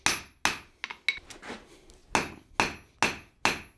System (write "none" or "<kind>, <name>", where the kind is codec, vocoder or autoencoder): none